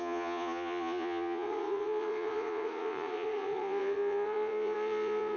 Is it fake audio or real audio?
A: fake